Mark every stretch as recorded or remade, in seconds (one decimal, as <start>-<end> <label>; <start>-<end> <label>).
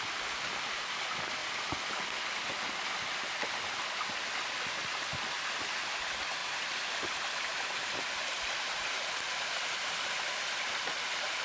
0.0-6.4 recorded; 6.4-8.9 remade; 8.9-11.4 recorded